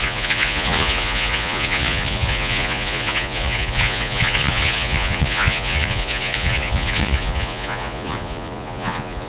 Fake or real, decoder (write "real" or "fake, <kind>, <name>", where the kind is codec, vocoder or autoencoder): fake, vocoder, Vocos